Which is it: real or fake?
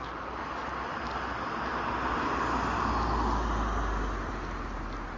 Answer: real